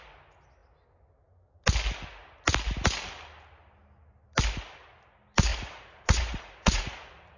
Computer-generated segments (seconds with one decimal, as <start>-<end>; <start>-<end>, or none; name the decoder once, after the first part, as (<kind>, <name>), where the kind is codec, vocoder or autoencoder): 5.5-7.4 (vocoder, Vocos)